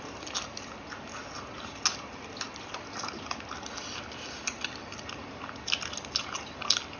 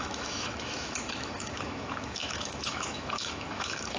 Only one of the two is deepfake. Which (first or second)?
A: second